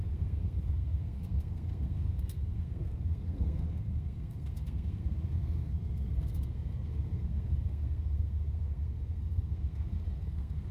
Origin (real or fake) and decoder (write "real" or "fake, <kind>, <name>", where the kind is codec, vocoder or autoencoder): fake, codec, SNAC